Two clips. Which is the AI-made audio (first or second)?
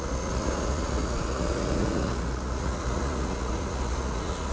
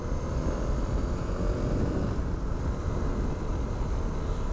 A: first